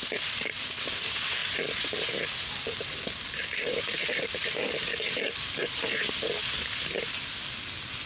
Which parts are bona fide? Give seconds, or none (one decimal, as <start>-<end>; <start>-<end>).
0.0-8.1